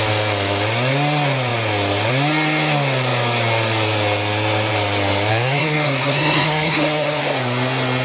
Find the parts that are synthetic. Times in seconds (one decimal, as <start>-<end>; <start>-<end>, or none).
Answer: 5.3-7.2